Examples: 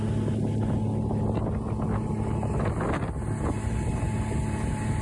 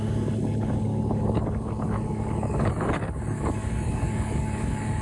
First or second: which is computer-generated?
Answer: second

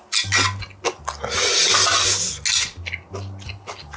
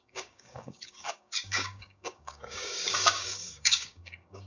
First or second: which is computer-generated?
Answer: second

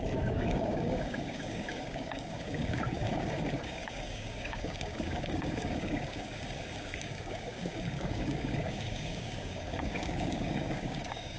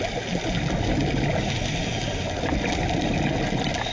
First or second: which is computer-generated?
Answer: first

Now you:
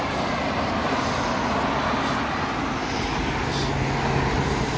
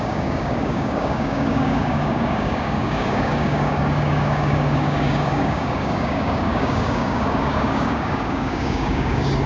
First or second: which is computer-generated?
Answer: second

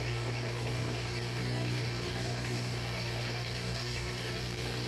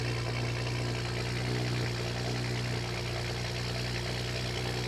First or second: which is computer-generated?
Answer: first